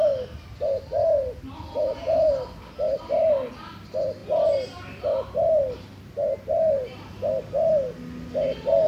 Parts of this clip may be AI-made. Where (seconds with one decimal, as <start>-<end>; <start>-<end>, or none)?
none